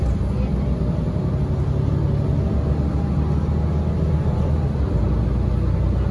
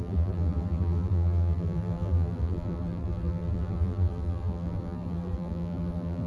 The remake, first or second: second